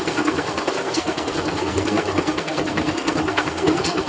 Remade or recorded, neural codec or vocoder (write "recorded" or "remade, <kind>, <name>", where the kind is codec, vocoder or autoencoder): remade, codec, SNAC